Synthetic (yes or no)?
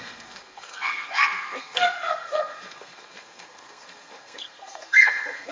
yes